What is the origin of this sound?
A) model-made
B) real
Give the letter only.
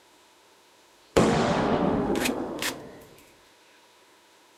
A